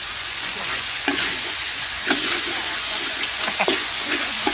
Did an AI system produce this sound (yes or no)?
yes